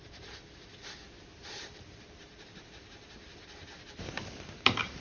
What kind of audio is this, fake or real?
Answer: fake